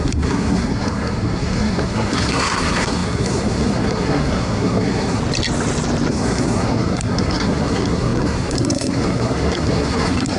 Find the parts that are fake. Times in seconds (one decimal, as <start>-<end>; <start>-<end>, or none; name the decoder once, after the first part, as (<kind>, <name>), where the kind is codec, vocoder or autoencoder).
0.0-5.2 (codec, SNAC); 6.1-10.4